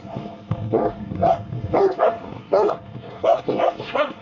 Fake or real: fake